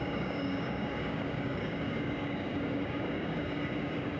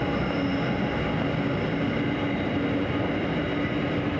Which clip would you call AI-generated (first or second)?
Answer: first